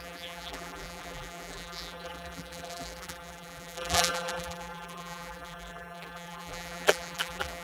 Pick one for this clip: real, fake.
fake